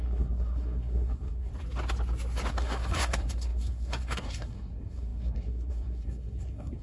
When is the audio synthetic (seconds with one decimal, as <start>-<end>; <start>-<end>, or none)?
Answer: 0.0-1.5; 2.5-6.8